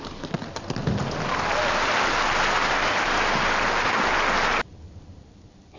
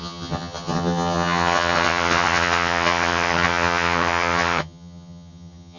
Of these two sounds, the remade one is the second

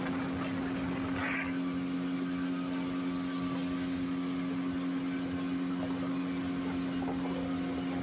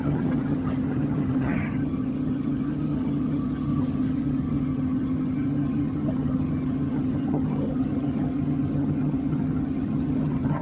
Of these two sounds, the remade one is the second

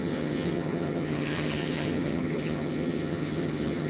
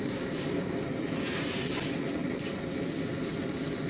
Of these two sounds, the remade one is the first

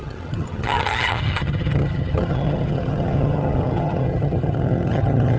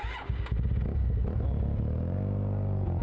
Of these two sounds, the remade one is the first